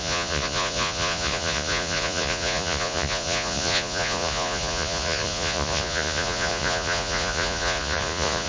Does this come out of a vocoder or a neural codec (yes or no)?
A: yes